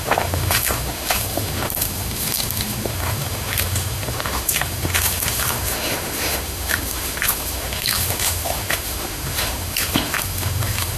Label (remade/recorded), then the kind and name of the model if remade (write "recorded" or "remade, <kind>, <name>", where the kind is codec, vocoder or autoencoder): remade, autoencoder, DAC-VAE